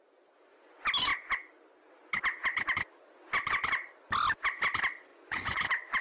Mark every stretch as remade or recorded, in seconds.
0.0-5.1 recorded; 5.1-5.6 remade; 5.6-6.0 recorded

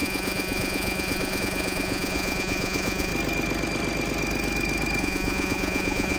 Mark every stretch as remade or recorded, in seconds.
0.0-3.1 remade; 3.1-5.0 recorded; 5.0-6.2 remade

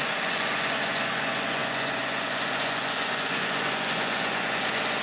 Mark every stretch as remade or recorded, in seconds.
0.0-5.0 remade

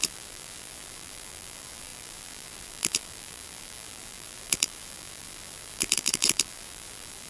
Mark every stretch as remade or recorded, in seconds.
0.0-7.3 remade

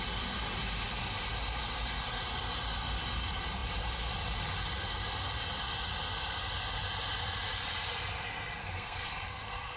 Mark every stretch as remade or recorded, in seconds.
0.0-8.6 recorded; 8.6-9.8 remade

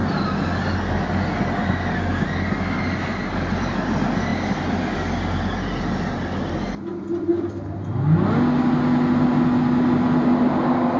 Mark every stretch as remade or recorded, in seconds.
0.0-11.0 recorded